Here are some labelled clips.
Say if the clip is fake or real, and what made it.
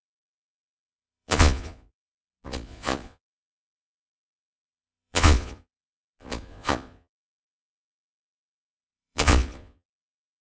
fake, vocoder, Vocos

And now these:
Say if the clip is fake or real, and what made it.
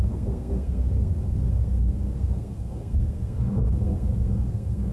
fake, codec, SNAC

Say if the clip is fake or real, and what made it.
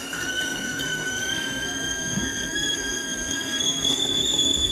fake, codec, SNAC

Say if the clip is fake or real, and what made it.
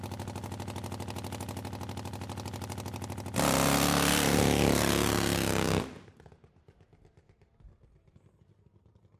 real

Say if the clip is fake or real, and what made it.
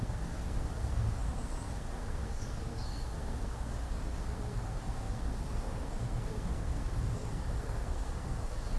fake, codec, SNAC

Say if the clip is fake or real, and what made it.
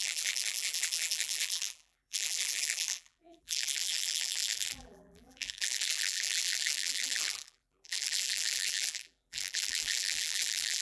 fake, vocoder, BigVGAN v2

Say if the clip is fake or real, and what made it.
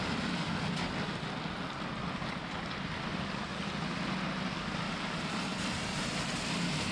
real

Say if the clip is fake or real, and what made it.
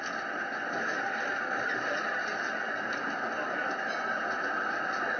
real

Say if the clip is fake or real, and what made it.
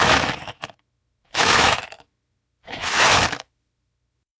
fake, autoencoder, DAC-VAE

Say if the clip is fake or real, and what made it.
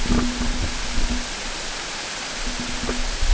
real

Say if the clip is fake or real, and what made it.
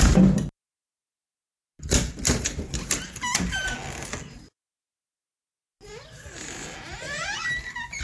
real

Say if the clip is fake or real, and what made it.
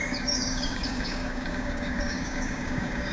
fake, codec, DAC